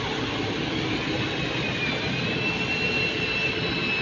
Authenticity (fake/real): real